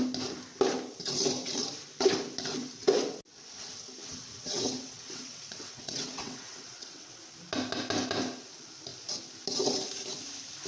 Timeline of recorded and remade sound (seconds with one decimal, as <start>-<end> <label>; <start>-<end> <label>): 0.0-2.6 recorded; 2.6-3.2 remade; 3.2-4.0 recorded; 4.0-7.2 remade; 7.2-10.7 recorded

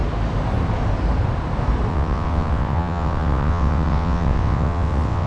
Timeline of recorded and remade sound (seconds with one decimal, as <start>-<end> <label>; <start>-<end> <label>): 0.0-1.9 recorded; 1.9-5.3 remade

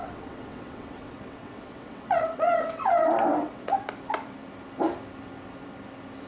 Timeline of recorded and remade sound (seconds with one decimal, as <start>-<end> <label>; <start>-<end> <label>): 0.0-3.8 remade; 3.8-6.3 recorded

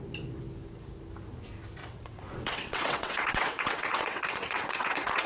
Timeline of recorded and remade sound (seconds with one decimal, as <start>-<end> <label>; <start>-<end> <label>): 0.0-1.8 recorded; 1.8-5.3 remade

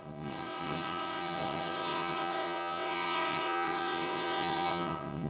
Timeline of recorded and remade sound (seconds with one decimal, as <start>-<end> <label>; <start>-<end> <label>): 0.0-5.3 remade

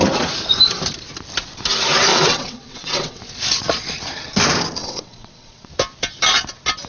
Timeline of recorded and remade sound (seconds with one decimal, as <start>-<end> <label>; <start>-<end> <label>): 0.0-2.1 recorded; 2.1-3.2 remade; 3.2-4.8 recorded; 4.8-5.7 remade; 5.7-6.9 recorded

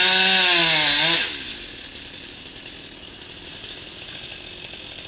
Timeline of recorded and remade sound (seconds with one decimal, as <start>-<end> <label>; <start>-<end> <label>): 0.0-5.1 recorded